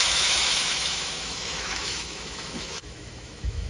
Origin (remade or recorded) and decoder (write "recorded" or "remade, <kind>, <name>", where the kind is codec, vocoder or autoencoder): remade, autoencoder, DAC-VAE